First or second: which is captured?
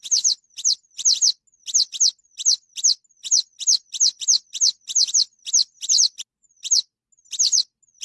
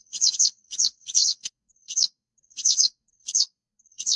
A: first